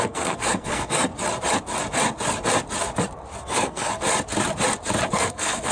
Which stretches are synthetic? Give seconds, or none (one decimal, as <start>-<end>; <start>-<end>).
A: 0.0-1.1; 3.4-3.9; 5.1-5.7